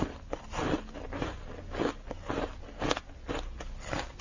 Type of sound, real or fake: real